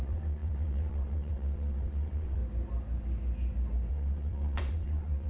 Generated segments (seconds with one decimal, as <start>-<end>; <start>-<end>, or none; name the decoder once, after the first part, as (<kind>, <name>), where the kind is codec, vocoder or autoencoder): 0.0-2.4 (vocoder, WaveNeXt); 3.9-5.3